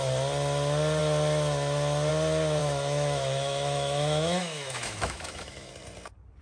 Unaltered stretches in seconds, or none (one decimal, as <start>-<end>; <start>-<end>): 0.0-2.6; 5.7-6.4